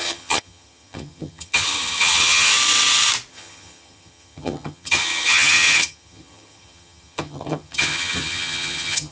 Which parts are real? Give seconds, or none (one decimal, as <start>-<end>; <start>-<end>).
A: 2.5-3.3